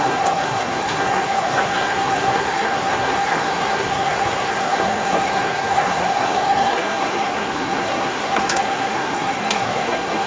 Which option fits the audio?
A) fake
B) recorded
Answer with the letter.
A